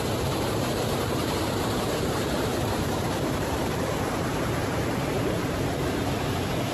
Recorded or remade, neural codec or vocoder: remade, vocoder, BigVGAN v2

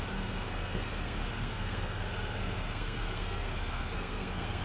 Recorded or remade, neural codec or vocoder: remade, codec, SNAC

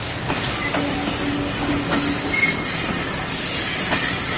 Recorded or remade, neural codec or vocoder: recorded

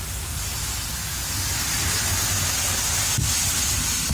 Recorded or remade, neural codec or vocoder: recorded